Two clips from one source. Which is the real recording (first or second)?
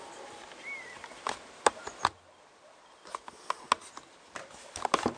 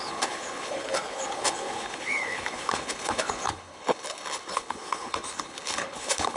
first